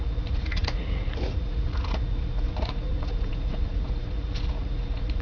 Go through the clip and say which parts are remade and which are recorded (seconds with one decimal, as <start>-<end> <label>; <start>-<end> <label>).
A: 0.0-5.2 remade